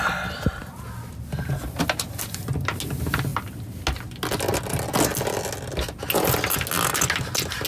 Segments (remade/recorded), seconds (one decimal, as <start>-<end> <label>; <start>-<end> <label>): 0.0-7.7 recorded